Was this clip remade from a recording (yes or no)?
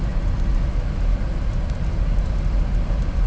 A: no